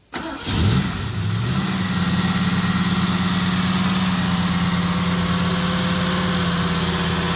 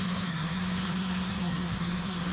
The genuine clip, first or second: first